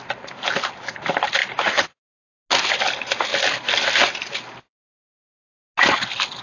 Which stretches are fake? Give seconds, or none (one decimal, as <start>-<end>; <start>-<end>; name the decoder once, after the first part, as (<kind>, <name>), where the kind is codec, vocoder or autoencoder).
none